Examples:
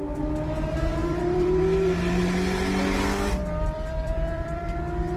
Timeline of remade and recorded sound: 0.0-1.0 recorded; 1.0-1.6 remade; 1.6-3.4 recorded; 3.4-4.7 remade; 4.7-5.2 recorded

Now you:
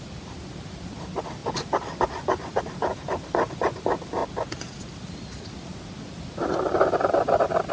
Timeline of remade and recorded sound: 0.0-7.7 recorded

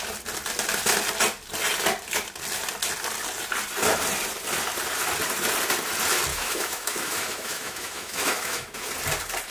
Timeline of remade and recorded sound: 0.0-6.3 recorded; 6.3-8.9 remade; 8.9-9.5 recorded